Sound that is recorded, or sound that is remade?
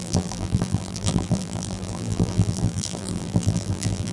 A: remade